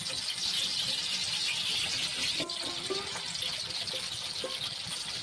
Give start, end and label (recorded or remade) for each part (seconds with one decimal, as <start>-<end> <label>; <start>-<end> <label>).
0.0-5.2 recorded